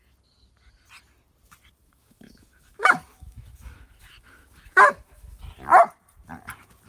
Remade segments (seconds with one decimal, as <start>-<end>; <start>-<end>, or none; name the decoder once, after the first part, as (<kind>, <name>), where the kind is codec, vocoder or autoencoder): 1.8-5.4 (autoencoder, DAC-VAE)